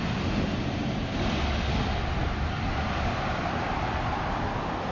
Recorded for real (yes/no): yes